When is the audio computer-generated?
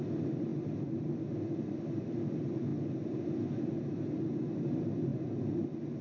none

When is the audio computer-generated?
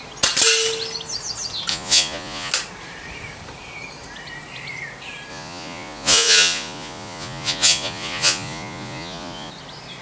1.7-2.5 (vocoder, Vocos); 5.3-9.5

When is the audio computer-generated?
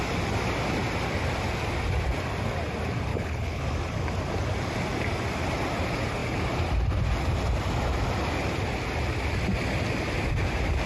3.1-3.6 (codec, HILCodec)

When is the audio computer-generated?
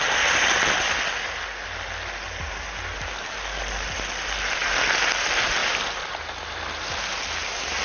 5.6-6.6 (vocoder, BigVGAN v2)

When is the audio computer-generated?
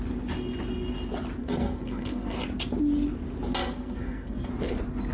1.4-2.4 (codec, SNAC); 3.6-4.5